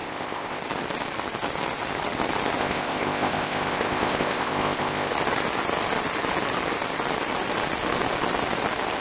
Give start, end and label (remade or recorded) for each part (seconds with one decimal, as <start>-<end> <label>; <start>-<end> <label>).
0.0-0.6 remade; 0.6-2.6 recorded; 2.6-5.1 remade; 5.1-9.0 recorded